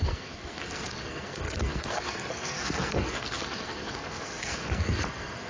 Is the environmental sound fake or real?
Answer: fake